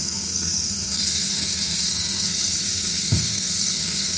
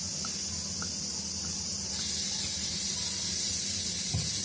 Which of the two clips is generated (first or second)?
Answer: first